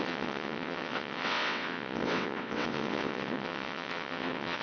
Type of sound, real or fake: fake